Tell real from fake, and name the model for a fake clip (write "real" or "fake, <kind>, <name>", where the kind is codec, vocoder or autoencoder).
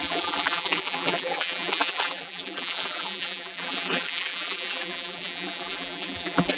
fake, vocoder, BigVGAN v2